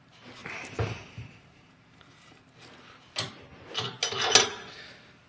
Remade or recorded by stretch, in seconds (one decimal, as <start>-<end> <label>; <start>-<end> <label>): 0.0-0.4 recorded; 0.4-2.4 remade; 2.4-5.3 recorded